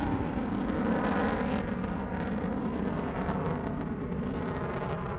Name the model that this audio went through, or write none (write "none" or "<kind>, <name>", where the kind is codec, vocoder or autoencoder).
none